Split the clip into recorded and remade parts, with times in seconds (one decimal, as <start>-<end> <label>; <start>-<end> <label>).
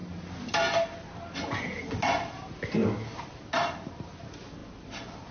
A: 0.0-5.3 recorded